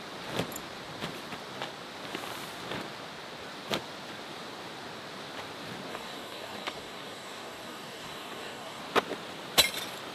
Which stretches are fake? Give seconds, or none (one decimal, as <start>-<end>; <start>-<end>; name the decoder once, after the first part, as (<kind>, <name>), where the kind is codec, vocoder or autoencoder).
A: 5.9-8.8 (codec, DAC)